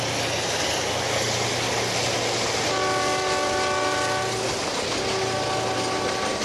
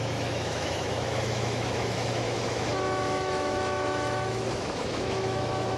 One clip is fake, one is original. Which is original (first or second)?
first